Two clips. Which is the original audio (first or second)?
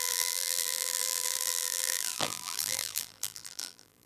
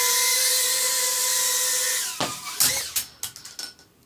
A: second